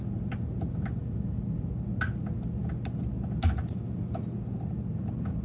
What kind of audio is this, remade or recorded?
recorded